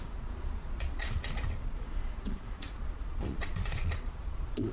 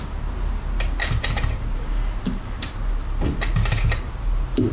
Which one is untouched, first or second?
second